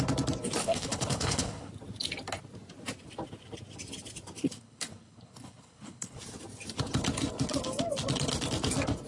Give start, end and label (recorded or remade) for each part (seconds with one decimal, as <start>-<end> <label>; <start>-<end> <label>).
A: 0.0-0.6 recorded; 0.6-1.7 remade; 1.7-4.4 recorded; 4.4-6.2 remade; 6.2-9.1 recorded